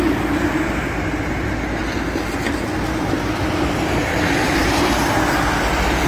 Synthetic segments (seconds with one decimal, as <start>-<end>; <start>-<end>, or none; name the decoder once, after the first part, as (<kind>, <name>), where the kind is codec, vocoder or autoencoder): none